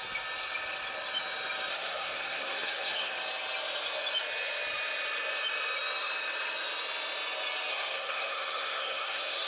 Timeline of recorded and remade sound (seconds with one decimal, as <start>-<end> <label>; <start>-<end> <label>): 0.0-1.7 recorded; 1.7-3.1 remade; 3.1-7.7 recorded; 7.7-9.5 remade